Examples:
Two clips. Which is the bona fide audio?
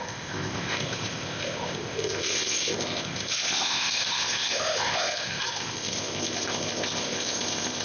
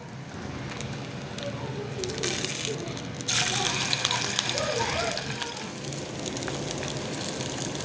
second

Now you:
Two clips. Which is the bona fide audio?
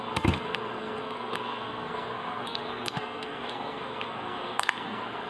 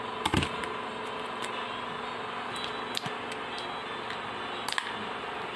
second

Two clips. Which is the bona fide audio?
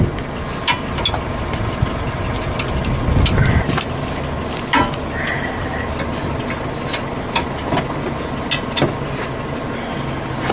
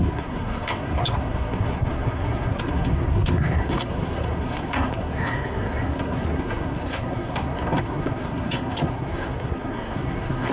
first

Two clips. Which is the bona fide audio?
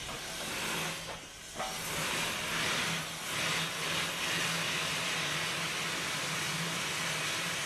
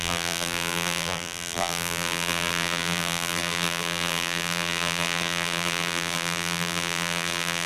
first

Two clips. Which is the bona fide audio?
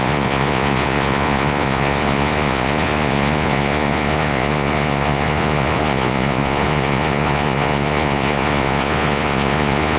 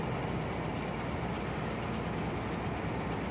second